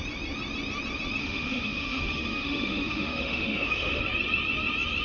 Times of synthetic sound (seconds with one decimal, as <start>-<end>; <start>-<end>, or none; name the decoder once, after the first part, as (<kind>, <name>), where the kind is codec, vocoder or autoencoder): 1.2-4.0 (autoencoder, DAC-VAE)